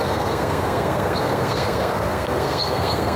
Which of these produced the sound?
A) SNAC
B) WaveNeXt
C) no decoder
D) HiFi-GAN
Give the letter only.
A